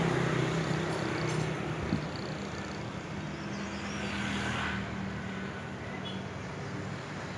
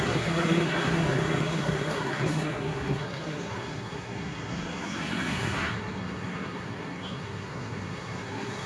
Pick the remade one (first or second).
second